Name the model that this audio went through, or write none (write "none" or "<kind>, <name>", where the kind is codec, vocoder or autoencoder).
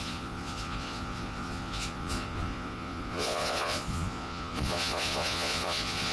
vocoder, Vocos